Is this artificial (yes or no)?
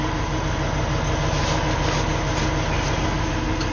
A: no